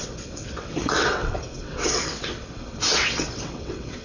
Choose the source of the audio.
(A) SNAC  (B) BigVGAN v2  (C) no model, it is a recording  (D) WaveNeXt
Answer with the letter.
D